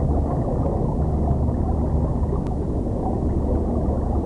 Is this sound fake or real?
real